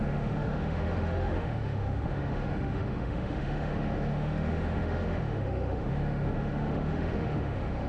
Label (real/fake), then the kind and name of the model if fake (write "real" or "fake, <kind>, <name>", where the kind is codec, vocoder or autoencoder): fake, autoencoder, DAC-VAE